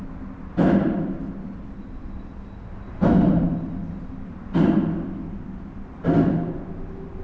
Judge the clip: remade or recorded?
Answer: recorded